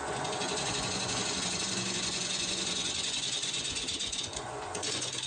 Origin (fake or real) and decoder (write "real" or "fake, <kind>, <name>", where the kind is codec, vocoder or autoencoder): fake, vocoder, Vocos